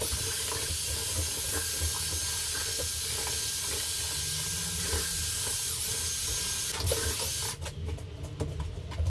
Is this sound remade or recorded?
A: recorded